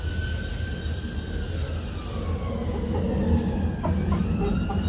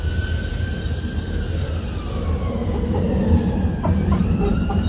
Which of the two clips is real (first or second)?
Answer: first